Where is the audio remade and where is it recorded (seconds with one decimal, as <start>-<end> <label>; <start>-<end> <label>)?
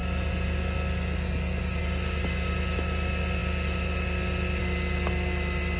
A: 0.0-5.8 recorded